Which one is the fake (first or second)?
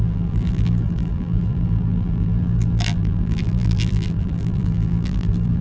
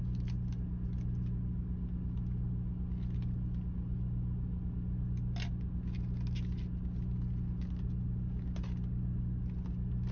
first